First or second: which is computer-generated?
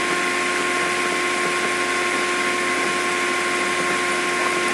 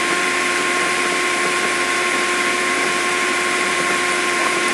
second